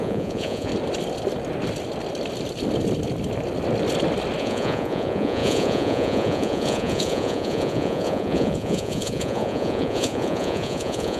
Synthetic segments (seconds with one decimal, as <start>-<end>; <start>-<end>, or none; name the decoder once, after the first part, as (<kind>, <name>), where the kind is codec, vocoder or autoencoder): 0.0-0.7 (vocoder, Vocos); 4.4-11.2